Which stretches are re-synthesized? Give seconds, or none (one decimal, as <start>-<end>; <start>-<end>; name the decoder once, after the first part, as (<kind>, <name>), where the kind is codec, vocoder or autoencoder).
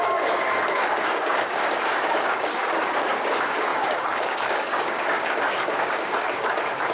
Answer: 0.0-6.9 (codec, DAC)